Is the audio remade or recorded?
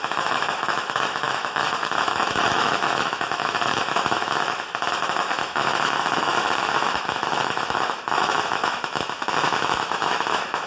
remade